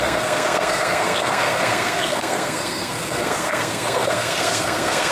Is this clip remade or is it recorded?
remade